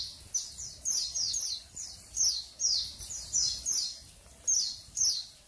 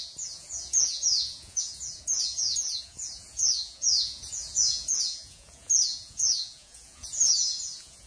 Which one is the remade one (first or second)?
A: second